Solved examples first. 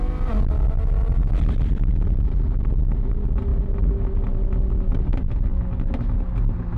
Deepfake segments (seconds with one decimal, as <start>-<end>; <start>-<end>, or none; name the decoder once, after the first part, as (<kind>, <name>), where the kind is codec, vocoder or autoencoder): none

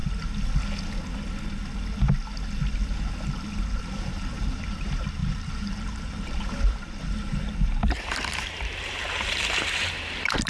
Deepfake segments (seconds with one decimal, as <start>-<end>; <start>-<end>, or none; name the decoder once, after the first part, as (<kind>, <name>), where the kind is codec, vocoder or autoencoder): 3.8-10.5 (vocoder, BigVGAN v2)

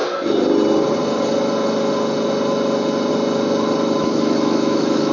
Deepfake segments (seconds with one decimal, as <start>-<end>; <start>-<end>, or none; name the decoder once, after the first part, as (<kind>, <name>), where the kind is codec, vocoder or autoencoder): 4.0-5.1 (autoencoder, DAC-VAE)

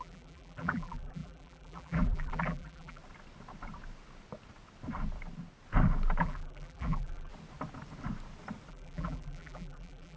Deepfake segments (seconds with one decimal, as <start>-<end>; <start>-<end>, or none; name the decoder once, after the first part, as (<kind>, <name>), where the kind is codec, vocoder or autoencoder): 0.0-3.0 (vocoder, BigVGAN v2); 6.2-7.3; 8.7-10.2

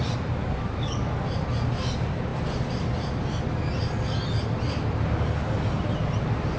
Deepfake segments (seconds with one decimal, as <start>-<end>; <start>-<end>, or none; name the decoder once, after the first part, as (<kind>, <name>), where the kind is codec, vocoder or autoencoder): 0.4-1.1 (codec, DAC)

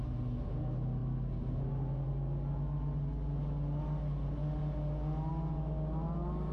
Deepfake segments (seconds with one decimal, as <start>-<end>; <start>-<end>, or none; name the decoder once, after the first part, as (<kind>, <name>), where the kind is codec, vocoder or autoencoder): none